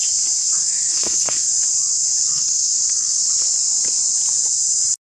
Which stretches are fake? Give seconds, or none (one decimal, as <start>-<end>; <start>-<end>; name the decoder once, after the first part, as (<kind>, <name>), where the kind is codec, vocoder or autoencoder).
0.4-1.5 (codec, SNAC); 2.3-3.2